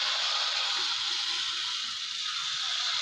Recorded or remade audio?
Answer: recorded